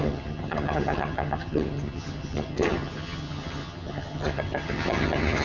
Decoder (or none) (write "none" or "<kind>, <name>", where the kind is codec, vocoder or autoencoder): vocoder, HiFi-GAN